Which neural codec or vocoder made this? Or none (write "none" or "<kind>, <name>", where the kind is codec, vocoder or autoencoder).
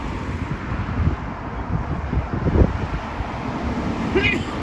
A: vocoder, BigVGAN v2